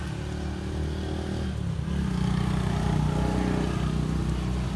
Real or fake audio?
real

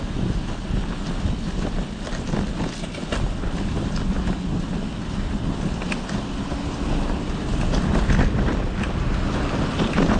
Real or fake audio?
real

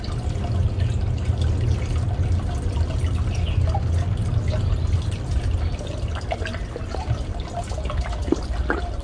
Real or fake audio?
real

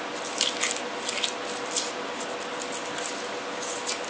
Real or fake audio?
real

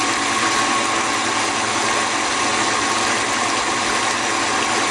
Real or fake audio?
real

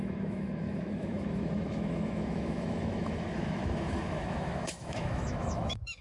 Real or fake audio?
fake